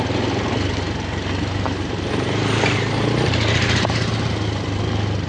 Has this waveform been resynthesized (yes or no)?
no